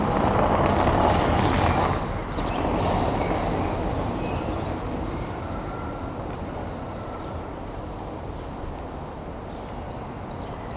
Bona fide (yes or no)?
yes